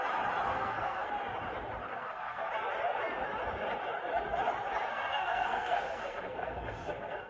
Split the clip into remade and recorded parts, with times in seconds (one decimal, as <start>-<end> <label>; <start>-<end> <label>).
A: 0.0-0.5 recorded; 0.5-1.1 remade; 1.1-1.9 recorded; 1.9-2.5 remade; 2.5-4.9 recorded; 4.9-7.3 remade